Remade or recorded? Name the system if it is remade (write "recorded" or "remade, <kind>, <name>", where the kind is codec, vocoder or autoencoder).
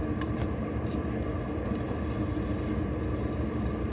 recorded